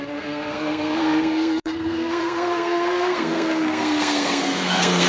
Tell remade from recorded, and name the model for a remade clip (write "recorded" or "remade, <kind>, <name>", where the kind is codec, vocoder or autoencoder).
remade, codec, SNAC